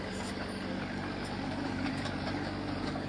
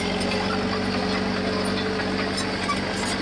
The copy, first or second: first